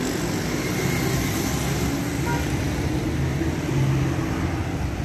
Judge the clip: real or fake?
real